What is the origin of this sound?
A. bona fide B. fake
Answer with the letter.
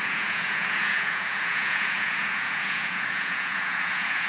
B